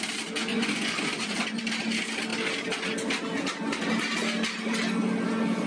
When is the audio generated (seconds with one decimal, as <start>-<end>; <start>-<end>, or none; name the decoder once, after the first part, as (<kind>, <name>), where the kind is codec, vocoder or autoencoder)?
0.5-1.6 (vocoder, Vocos)